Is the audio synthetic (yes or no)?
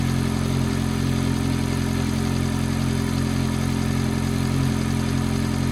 no